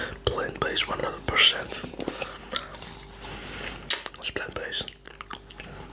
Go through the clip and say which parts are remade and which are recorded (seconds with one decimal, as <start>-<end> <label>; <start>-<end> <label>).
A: 0.0-5.9 recorded